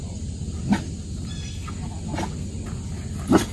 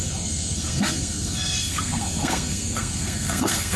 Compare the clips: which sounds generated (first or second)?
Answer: second